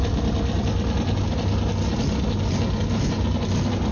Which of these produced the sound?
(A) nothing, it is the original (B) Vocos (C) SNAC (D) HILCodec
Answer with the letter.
A